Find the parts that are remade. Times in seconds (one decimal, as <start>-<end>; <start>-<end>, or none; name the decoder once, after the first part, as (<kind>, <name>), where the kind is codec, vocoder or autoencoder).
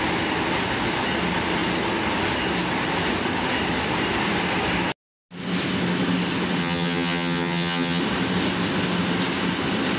6.6-8.0 (vocoder, HiFi-GAN)